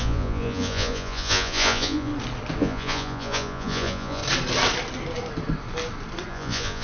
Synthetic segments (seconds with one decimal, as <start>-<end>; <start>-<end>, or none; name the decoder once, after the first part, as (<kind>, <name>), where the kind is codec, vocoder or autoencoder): 0.0-2.1 (vocoder, Vocos); 2.6-4.2; 6.3-6.8